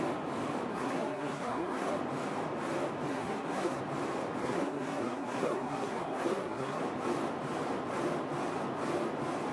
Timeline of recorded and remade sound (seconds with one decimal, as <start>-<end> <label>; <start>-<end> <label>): 0.0-0.7 recorded; 0.7-1.9 remade; 1.9-3.1 recorded; 3.1-3.8 remade; 3.8-4.4 recorded; 4.4-6.8 remade; 6.8-9.5 recorded